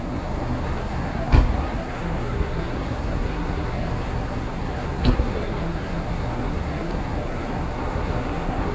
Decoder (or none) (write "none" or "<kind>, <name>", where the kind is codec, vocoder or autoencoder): codec, SNAC